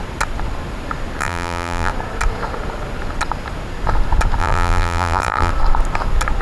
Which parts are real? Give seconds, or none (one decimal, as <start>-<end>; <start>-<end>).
0.0-1.2; 1.9-4.4; 5.5-6.4